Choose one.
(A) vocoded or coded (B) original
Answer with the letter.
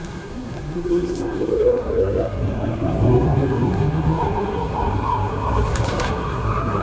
A